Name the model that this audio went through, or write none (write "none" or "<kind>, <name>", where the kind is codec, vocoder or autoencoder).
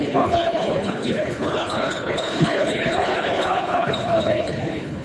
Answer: codec, HILCodec